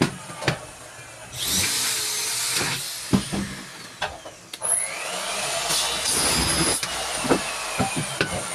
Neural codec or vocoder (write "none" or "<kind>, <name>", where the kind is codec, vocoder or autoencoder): none